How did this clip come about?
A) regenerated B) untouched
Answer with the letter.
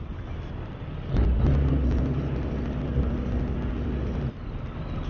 B